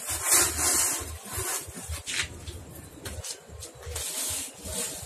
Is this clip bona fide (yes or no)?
yes